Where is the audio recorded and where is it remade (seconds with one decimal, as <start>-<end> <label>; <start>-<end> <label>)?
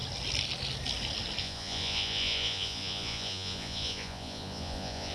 0.0-1.4 recorded; 1.4-5.1 remade